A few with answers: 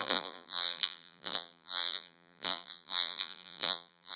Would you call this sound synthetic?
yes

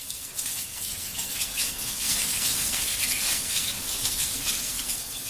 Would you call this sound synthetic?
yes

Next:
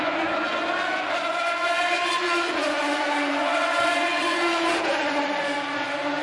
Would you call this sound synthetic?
yes